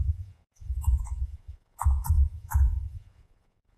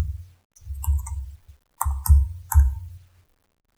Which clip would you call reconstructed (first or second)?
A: first